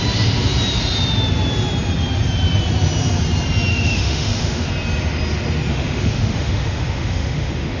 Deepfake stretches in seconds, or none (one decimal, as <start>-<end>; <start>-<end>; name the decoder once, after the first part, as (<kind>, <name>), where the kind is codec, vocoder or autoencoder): 3.7-4.7 (autoencoder, DAC-VAE); 5.7-7.8